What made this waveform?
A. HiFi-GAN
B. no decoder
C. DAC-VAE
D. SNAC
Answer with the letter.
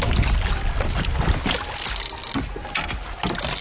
B